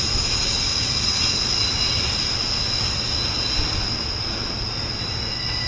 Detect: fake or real real